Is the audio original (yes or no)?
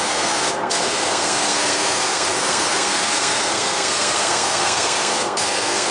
no